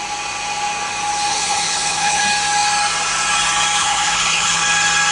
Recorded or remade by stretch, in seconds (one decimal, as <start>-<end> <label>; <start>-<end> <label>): 0.0-1.3 recorded; 1.3-2.2 remade; 2.2-3.8 recorded; 3.8-4.6 remade; 4.6-5.1 recorded